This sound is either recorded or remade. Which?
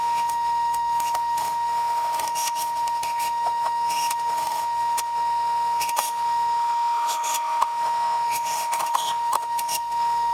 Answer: remade